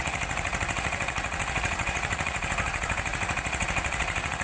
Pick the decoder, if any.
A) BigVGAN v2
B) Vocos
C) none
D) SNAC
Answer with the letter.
B